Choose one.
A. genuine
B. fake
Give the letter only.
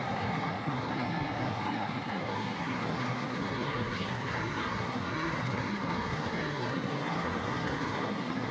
B